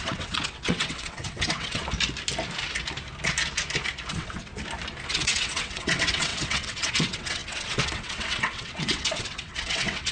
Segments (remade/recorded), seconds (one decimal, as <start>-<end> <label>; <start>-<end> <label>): 0.0-1.8 remade; 1.8-4.1 recorded; 4.1-4.5 remade; 4.5-5.1 recorded; 5.1-10.1 remade